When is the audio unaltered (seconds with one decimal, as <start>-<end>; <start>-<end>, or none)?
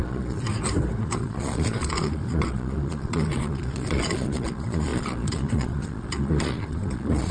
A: 0.5-1.0